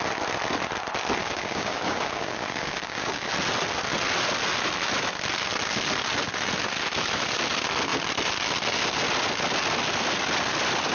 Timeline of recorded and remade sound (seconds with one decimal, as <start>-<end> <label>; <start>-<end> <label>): 0.0-1.2 recorded; 1.2-3.3 remade; 3.3-10.9 recorded